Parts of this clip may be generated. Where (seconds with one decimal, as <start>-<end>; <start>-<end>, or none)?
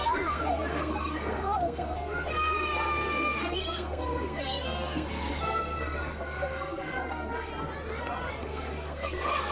0.0-7.5; 8.3-9.5